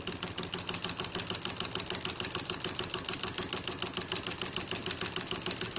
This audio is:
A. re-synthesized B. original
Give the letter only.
B